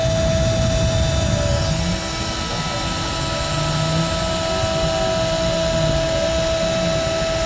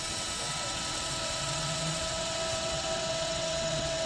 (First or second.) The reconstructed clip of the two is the second